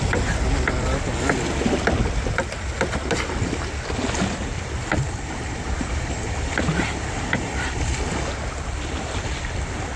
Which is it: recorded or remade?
recorded